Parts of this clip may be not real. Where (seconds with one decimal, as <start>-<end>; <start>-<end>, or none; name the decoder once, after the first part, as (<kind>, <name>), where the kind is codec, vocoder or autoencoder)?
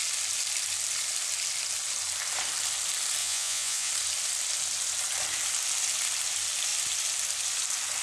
3.2-3.9 (vocoder, Vocos)